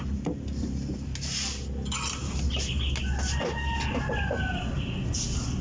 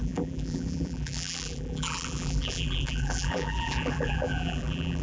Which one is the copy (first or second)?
second